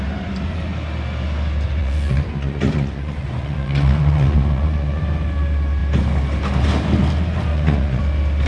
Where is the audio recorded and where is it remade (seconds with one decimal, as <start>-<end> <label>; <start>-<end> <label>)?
0.0-1.8 recorded; 1.8-5.0 remade; 5.0-7.5 recorded; 7.5-8.0 remade; 8.0-8.5 recorded